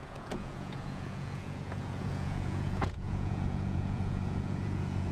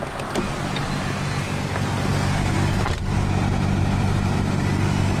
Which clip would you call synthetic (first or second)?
first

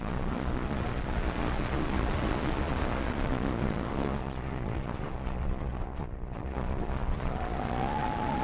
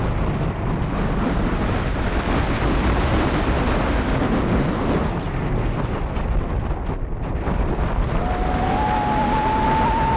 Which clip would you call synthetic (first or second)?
first